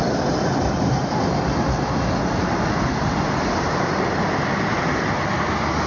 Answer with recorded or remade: recorded